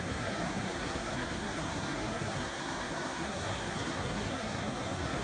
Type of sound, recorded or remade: remade